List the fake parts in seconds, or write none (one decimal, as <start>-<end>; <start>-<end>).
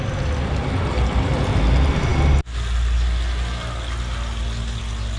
none